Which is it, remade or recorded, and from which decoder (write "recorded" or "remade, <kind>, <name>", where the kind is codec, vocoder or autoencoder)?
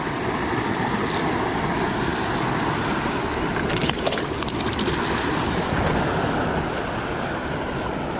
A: recorded